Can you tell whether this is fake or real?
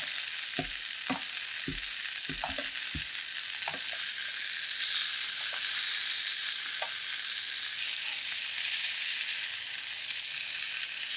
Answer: real